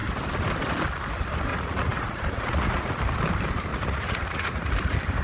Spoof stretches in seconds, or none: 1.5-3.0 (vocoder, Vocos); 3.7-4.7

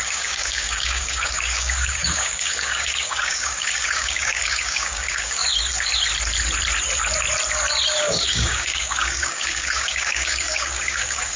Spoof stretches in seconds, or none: 0.0-5.4 (codec, DAC); 8.0-11.4